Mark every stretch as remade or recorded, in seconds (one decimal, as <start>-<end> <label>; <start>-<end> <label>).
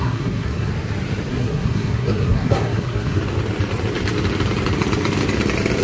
0.0-0.7 remade; 0.7-1.3 recorded; 1.3-3.2 remade; 3.2-5.8 recorded